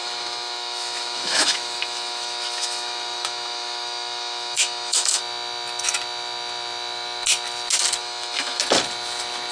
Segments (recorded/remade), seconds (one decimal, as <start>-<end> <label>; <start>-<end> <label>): 0.0-5.2 remade; 5.2-8.0 recorded; 8.0-8.6 remade; 8.6-9.5 recorded